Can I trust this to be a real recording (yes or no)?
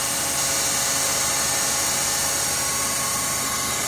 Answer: yes